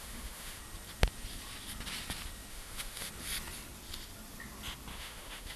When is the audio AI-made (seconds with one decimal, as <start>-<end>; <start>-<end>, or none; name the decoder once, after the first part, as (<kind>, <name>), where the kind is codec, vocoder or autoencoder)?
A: 0.0-0.6 (autoencoder, DAC-VAE); 2.5-3.1; 4.9-5.6